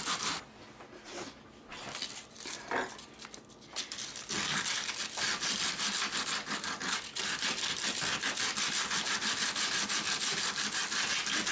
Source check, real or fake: real